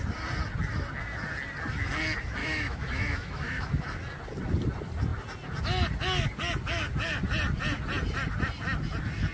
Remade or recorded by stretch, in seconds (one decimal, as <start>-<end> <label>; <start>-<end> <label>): 0.0-2.4 recorded; 2.4-3.7 remade; 3.7-9.3 recorded